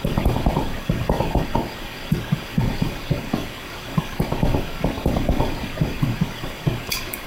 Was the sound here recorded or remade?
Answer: remade